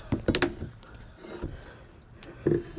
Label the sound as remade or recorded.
recorded